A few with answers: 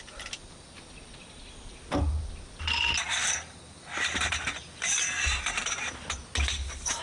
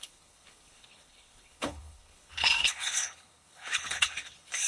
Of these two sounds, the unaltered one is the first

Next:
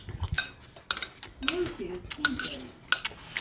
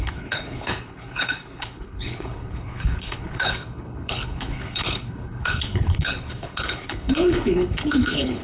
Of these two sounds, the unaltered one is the first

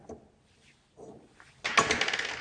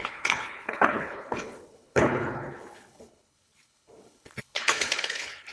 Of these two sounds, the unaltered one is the first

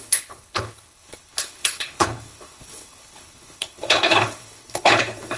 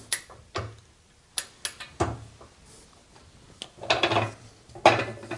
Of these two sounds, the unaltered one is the second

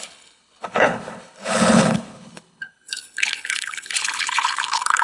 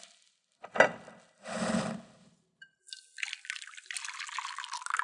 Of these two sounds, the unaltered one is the second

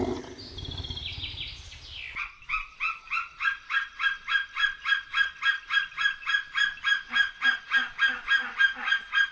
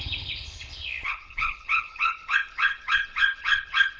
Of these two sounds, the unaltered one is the first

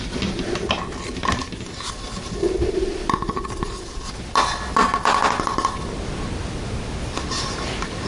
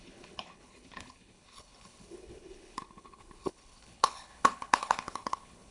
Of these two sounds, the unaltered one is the first